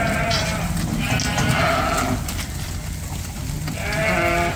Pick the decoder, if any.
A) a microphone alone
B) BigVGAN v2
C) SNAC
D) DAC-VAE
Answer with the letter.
A